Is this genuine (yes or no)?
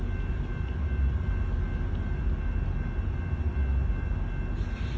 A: yes